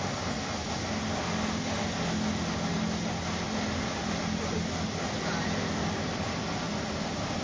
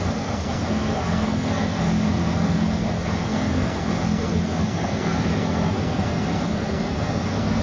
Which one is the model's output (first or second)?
second